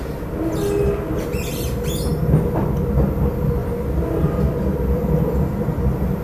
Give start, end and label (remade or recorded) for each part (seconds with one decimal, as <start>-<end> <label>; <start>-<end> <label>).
0.0-3.6 recorded; 3.6-4.4 remade; 4.4-6.2 recorded

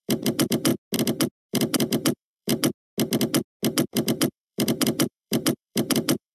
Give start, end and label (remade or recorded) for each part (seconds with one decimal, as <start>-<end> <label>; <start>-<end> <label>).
0.0-0.7 remade; 0.7-1.5 recorded; 1.5-2.5 remade; 2.5-3.9 recorded; 3.9-6.3 remade